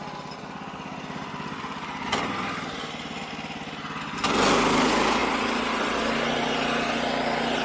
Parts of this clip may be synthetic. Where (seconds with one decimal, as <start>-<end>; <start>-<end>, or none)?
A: 5.2-6.5